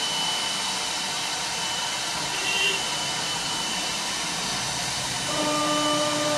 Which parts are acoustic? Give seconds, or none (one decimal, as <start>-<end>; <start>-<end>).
4.5-5.2